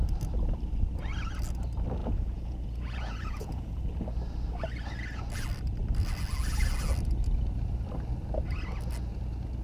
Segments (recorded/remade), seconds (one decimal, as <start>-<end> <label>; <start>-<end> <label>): 0.0-2.0 recorded; 2.0-3.8 remade; 3.8-9.6 recorded